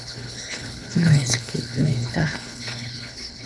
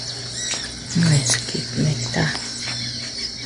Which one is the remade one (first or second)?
first